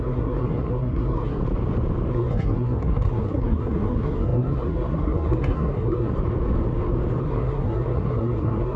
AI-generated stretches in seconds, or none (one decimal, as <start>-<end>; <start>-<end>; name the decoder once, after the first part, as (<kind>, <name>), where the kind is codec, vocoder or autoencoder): 0.0-1.4 (codec, SNAC); 2.1-6.1; 7.2-8.8

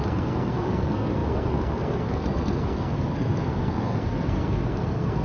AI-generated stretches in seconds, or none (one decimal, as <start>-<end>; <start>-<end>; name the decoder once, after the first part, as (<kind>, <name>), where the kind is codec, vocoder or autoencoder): 0.0-5.2 (codec, SNAC)

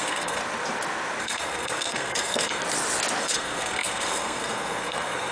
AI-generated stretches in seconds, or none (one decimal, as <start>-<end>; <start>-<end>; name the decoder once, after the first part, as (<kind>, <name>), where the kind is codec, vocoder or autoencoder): 0.0-0.4 (codec, SNAC); 1.2-2.6; 3.2-5.3

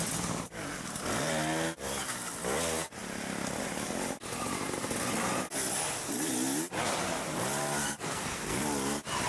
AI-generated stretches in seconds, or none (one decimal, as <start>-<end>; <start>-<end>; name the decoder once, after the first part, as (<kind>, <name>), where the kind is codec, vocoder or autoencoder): 7.8-8.6 (codec, SNAC)

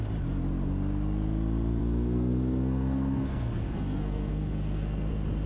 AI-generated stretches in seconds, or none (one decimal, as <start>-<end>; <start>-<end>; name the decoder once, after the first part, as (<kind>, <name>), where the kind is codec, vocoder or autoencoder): 1.8-5.1 (codec, SNAC)

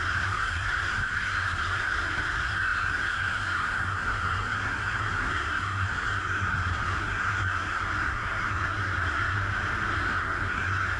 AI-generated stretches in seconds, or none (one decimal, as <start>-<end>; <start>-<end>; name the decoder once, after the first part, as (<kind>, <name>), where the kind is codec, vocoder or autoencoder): 0.0-9.4 (codec, SNAC); 9.9-11.0

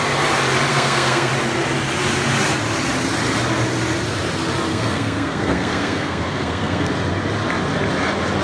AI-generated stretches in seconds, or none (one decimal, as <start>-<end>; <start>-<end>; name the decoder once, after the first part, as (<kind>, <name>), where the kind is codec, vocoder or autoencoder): 0.7-1.3 (codec, SNAC); 4.7-6.9